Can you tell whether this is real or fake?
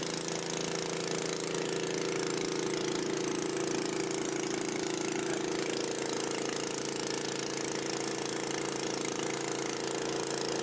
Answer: real